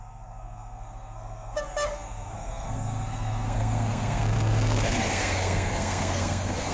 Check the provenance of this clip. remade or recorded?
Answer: remade